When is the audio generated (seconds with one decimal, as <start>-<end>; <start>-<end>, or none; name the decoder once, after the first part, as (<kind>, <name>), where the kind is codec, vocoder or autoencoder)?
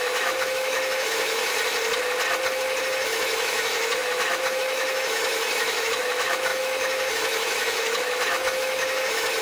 0.0-1.5 (autoencoder, DAC-VAE); 2.8-9.4